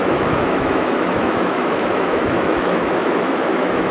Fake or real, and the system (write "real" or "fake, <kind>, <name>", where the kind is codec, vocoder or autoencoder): fake, autoencoder, DAC-VAE